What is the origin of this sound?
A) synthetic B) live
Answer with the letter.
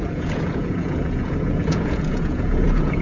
A